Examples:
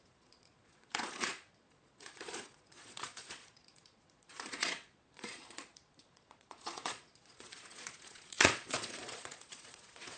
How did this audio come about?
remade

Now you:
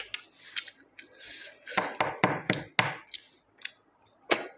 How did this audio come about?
recorded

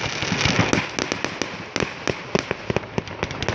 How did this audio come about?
recorded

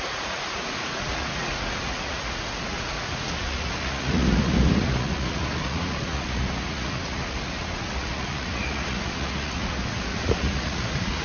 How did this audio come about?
remade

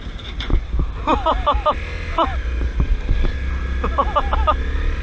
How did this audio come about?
recorded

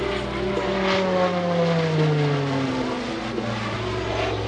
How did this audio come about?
recorded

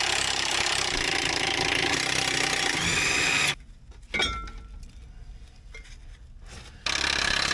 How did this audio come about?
recorded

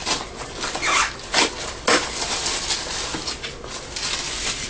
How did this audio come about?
recorded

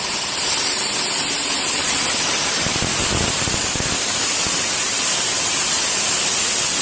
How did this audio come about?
recorded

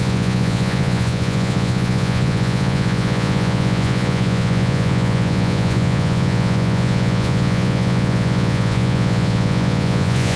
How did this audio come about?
remade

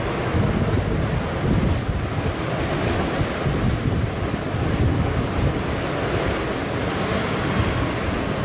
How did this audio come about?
recorded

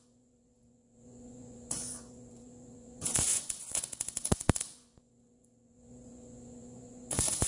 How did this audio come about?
remade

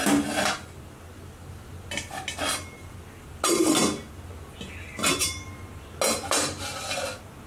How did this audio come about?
recorded